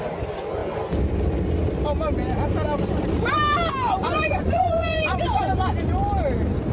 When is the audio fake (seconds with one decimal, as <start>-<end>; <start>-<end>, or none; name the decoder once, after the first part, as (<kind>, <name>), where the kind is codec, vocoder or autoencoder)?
4.0-5.5 (vocoder, Vocos)